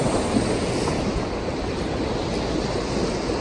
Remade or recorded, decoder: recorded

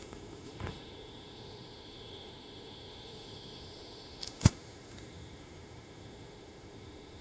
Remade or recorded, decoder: remade, autoencoder, DAC-VAE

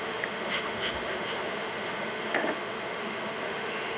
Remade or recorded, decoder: remade, autoencoder, DAC-VAE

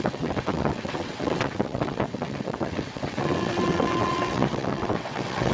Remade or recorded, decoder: remade, vocoder, WaveNeXt